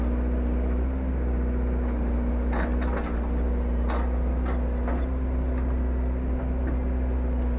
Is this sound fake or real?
real